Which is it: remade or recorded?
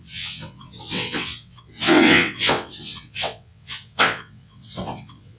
remade